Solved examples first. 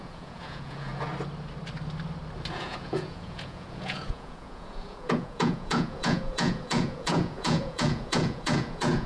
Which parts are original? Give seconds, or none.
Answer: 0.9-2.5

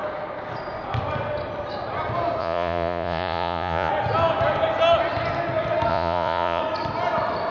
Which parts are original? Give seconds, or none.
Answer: 0.0-2.4; 3.9-5.9; 6.6-7.5

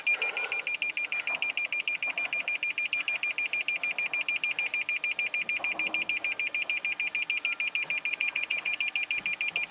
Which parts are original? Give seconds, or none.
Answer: 0.0-8.1; 8.8-9.7

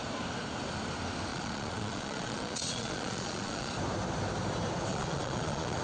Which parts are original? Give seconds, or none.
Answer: 0.0-1.3; 3.7-4.9